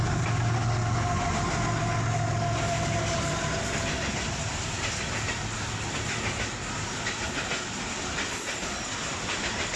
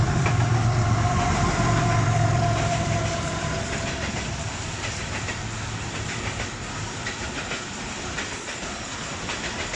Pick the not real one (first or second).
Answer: second